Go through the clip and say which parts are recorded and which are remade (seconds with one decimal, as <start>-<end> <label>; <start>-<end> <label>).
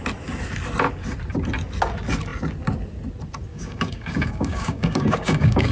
0.0-3.5 recorded; 3.5-5.7 remade